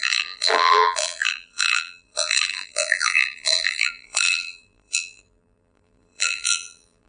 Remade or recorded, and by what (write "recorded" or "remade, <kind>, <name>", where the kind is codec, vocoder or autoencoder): remade, vocoder, BigVGAN v2